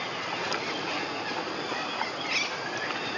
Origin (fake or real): real